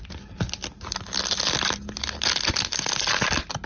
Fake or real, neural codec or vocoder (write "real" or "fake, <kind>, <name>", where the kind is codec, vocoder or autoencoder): real